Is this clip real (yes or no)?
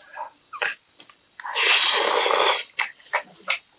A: yes